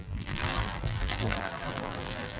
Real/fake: fake